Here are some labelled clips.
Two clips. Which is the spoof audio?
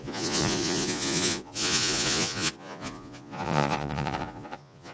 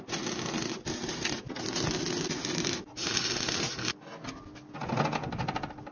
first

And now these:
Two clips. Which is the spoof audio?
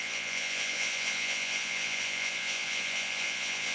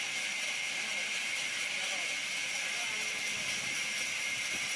first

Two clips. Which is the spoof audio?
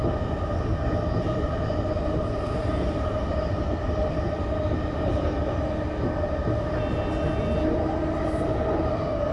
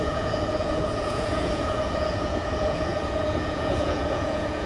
second